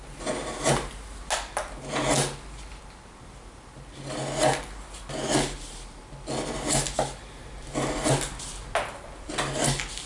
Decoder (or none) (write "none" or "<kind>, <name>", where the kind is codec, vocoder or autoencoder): none